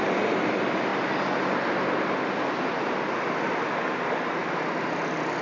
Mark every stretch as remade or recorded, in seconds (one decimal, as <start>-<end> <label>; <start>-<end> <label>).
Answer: 0.0-5.4 recorded